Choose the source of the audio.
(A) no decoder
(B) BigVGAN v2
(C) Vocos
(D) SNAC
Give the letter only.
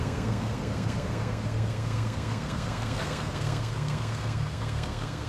D